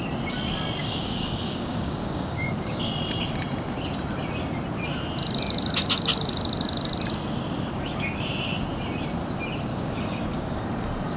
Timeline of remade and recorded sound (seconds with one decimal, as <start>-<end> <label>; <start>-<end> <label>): 0.0-0.8 recorded; 0.8-2.9 remade; 2.9-9.7 recorded; 9.7-10.6 remade; 10.6-11.2 recorded